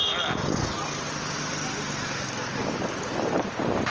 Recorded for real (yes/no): yes